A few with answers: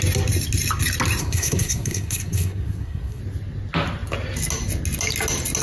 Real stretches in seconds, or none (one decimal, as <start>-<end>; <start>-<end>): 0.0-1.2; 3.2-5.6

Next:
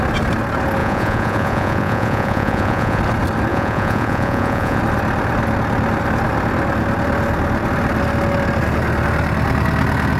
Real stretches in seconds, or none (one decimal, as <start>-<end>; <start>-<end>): 0.0-0.8; 3.0-3.5; 4.8-10.2

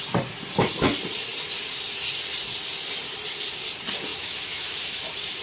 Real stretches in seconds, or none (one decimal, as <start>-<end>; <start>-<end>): 0.0-4.1; 5.0-5.4